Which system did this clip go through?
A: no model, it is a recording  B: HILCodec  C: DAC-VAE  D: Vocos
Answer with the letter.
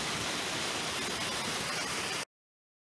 A